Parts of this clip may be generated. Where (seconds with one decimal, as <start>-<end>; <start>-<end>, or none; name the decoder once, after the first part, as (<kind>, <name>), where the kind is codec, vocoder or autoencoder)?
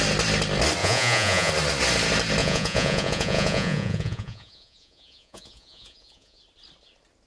0.8-1.5 (vocoder, Vocos); 2.4-6.4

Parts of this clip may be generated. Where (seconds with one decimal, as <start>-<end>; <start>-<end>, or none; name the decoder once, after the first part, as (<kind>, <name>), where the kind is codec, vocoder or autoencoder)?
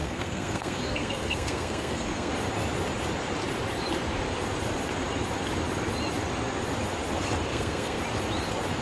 0.0-2.3 (codec, SNAC); 7.5-8.0